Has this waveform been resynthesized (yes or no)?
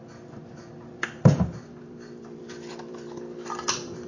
yes